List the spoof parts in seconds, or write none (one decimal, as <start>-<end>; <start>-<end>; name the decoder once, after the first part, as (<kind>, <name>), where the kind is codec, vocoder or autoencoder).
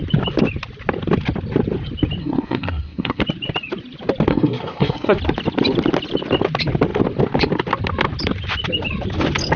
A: 2.2-3.2 (codec, SNAC); 4.3-5.2